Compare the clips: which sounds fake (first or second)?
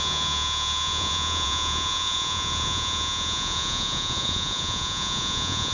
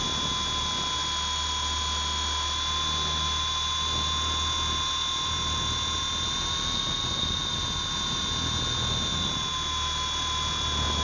first